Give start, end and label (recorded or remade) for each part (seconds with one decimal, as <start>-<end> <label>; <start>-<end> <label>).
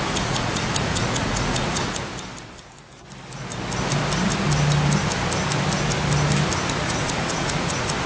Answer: 0.0-2.1 remade; 2.1-6.7 recorded; 6.7-8.1 remade